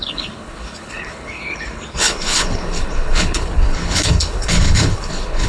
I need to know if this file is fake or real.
fake